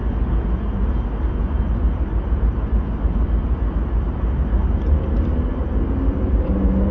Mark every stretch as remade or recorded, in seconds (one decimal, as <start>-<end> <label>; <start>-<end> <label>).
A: 0.0-6.9 recorded